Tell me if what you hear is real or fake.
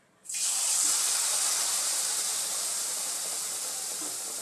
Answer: fake